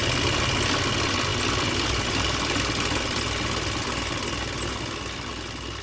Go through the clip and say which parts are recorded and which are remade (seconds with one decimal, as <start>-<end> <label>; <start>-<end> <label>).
0.0-5.8 recorded